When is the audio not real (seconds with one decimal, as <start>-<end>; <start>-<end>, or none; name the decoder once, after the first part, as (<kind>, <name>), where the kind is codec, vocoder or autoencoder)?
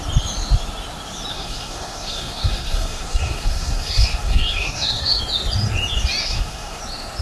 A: 1.3-5.2 (codec, SNAC); 6.2-6.8